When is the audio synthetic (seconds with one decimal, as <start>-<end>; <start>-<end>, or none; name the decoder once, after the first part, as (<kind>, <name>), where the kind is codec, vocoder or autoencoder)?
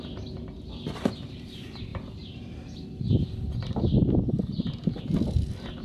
none